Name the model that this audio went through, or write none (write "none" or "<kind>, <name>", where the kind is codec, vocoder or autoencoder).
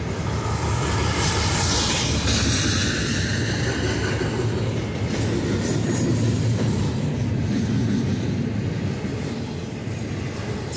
none